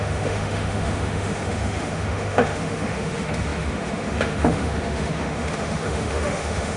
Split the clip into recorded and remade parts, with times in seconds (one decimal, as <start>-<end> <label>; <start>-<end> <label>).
0.0-6.8 remade